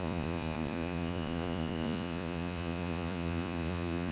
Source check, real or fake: fake